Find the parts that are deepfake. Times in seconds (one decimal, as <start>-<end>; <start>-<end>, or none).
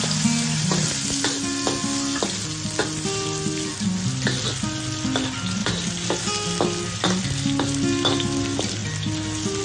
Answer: none